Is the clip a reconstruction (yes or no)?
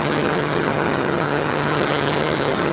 yes